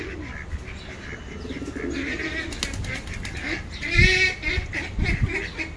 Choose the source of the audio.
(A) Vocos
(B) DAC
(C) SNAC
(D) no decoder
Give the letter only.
D